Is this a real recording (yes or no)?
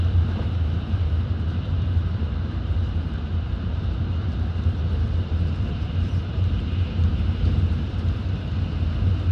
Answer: no